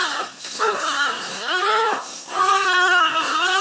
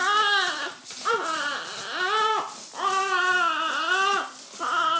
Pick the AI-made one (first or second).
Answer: first